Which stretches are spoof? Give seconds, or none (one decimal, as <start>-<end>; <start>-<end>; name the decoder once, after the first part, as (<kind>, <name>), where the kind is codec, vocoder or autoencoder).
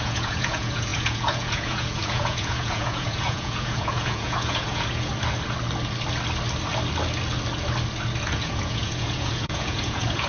0.0-5.1 (vocoder, Vocos); 8.2-10.3